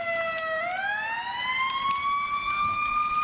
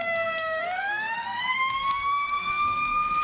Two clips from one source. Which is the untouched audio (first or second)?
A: first